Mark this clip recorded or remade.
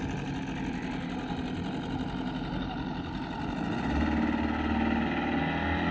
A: recorded